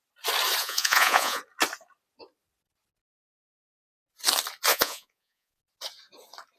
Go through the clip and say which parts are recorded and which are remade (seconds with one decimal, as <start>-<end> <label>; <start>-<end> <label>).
0.0-0.6 recorded; 0.6-1.4 remade; 1.4-4.7 recorded; 4.7-5.6 remade; 5.6-6.6 recorded